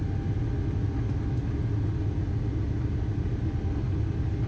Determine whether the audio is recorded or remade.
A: recorded